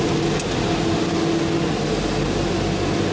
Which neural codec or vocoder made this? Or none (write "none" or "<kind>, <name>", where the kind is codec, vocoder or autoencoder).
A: none